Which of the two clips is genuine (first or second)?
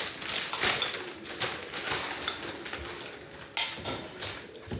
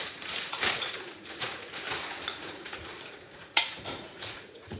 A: first